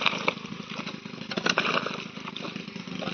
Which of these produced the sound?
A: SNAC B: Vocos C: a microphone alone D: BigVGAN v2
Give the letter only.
C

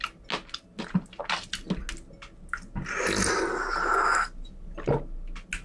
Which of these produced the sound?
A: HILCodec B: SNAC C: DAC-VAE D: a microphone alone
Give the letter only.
D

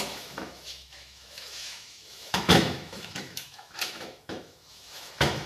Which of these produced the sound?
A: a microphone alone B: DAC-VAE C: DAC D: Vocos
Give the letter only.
B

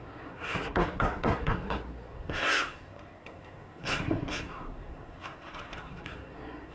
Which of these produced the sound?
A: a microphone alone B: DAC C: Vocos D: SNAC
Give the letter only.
D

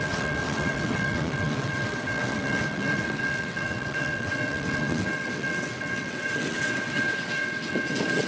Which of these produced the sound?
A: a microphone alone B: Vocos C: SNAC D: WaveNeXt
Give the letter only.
D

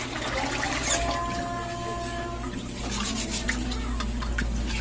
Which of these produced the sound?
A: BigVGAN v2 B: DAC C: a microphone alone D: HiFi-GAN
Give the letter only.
C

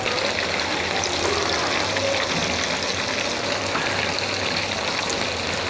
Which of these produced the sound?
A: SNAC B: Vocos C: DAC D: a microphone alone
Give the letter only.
D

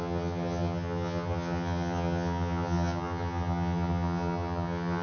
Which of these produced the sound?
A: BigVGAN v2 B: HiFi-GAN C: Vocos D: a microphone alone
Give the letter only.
B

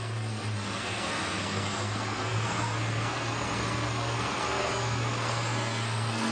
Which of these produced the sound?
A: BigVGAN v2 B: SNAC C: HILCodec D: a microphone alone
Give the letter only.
B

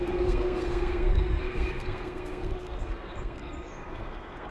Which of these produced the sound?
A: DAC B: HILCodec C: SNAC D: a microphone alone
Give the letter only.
C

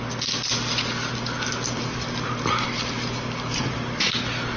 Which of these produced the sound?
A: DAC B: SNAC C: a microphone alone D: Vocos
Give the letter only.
C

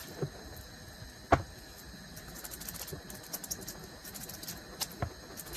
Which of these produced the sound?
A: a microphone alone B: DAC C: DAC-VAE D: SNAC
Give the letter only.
A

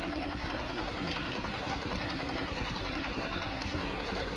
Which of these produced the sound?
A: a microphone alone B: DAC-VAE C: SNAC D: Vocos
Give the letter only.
C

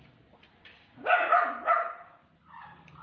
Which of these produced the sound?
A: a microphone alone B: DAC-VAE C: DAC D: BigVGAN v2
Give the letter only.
A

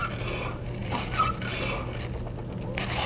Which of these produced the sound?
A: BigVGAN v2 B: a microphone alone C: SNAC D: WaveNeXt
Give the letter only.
B